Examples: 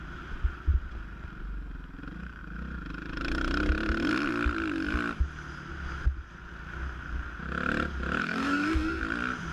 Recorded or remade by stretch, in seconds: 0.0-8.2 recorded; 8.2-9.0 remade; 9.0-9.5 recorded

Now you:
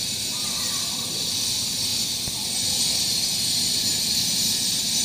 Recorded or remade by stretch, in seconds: 0.0-5.0 recorded

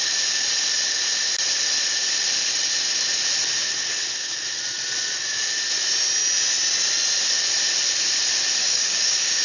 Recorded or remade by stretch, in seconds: 0.0-8.6 recorded; 8.6-9.4 remade

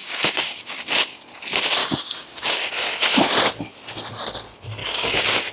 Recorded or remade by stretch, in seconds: 0.0-0.8 remade; 0.8-1.8 recorded; 1.8-2.7 remade; 2.7-4.8 recorded; 4.8-5.5 remade

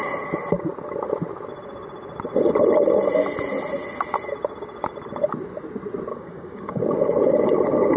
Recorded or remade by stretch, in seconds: 0.0-6.1 recorded; 6.1-6.8 remade; 6.8-8.0 recorded

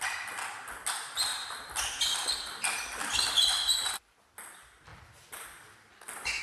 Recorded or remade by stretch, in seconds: 0.0-6.4 recorded